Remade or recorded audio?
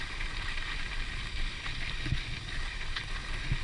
remade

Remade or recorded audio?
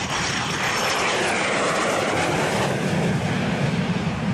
recorded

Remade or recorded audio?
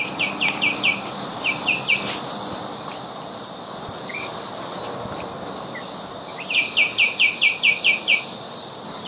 recorded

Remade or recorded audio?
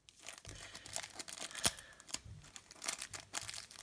recorded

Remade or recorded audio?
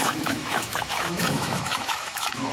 remade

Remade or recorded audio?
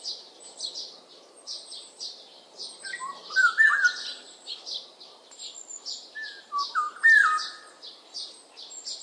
remade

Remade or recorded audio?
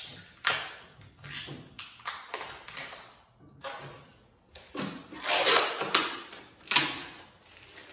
recorded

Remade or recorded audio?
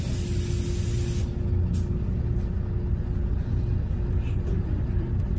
recorded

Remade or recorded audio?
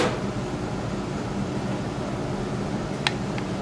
recorded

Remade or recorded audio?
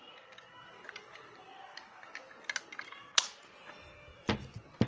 recorded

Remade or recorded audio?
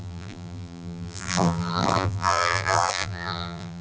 remade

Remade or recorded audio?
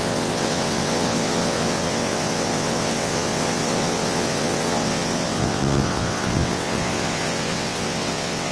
remade